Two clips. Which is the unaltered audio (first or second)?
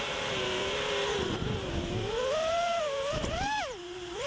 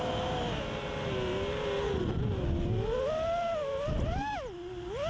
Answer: second